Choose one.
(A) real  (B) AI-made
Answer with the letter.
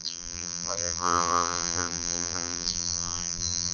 B